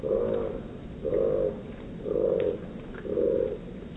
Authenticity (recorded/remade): recorded